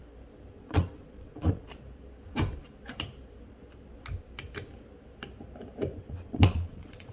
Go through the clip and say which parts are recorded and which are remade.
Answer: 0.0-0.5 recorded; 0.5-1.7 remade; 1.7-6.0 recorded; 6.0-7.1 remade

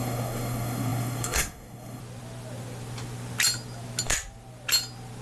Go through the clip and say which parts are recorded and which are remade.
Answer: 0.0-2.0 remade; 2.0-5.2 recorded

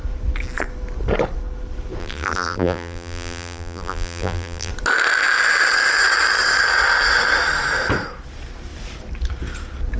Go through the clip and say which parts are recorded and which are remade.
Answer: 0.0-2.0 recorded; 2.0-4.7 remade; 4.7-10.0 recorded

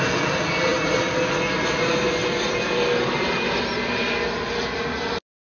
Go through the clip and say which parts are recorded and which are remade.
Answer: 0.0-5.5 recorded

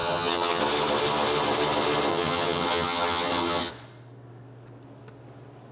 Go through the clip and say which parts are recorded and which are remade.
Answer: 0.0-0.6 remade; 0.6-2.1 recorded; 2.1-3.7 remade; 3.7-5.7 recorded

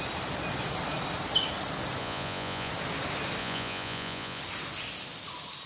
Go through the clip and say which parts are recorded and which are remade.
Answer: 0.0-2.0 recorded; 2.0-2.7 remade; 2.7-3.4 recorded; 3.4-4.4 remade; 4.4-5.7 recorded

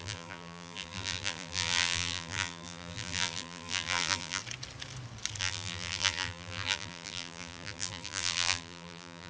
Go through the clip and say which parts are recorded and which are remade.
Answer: 0.0-4.4 remade; 4.4-5.4 recorded; 5.4-9.3 remade